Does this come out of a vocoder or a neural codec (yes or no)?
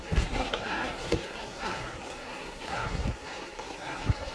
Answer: yes